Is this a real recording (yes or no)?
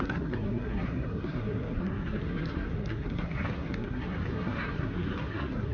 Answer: no